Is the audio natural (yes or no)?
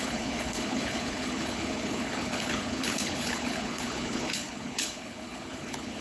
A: no